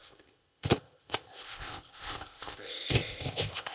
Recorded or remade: remade